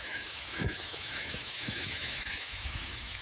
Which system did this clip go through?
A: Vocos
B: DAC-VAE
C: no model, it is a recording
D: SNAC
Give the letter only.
B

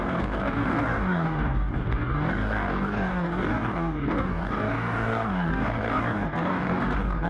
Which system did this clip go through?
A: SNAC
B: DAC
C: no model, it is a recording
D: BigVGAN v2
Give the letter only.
B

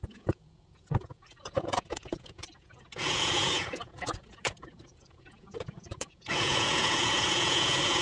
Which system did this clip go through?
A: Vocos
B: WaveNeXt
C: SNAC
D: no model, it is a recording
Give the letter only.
A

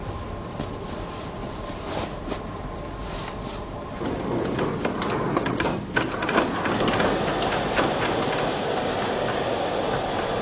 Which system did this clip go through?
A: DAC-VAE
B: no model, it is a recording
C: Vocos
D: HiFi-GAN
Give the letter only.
B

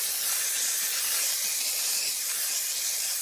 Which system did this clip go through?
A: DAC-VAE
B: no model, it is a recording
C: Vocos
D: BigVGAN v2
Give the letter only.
B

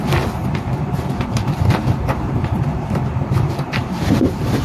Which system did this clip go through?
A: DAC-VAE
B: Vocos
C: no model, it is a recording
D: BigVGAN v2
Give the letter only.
D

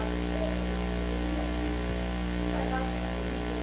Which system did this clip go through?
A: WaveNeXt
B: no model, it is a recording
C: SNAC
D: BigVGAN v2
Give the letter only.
B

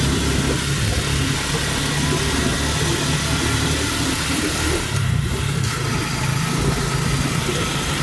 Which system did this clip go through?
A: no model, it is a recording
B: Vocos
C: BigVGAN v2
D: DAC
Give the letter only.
A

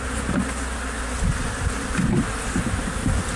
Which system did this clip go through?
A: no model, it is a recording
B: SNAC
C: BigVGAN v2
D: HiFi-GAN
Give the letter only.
A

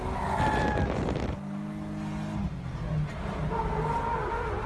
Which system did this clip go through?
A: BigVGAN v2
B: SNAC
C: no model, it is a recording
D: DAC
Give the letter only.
C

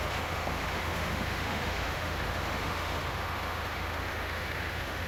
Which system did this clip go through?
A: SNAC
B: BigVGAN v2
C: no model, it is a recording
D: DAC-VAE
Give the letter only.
D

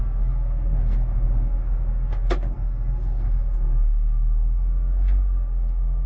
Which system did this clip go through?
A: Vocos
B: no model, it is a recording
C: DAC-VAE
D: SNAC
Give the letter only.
D